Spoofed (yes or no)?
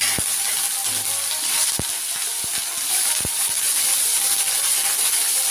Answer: no